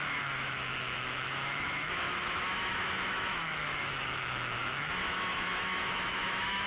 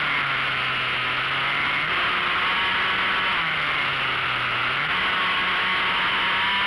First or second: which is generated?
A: first